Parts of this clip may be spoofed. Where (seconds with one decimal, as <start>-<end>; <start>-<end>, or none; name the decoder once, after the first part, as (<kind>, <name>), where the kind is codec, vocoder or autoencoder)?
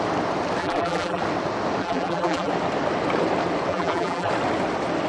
0.6-1.2 (vocoder, BigVGAN v2); 1.8-2.5; 3.7-4.3